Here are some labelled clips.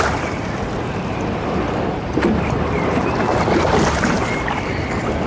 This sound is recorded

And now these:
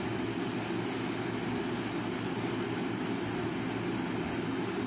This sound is recorded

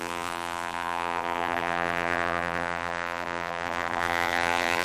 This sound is remade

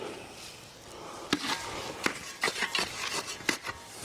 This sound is recorded